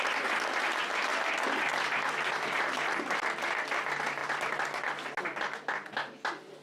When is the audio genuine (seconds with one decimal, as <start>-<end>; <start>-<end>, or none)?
0.0-6.6